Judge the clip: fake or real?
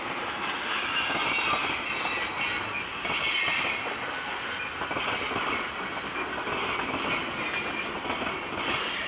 real